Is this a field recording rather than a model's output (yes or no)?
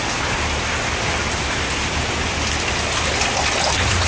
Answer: yes